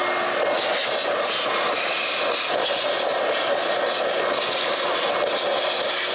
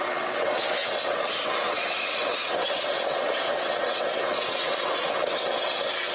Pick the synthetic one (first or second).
second